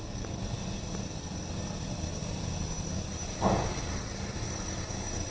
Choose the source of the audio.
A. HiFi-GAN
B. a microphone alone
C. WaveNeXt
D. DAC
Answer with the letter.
B